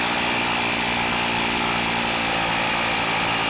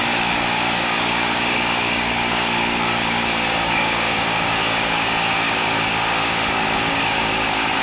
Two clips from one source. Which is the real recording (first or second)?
first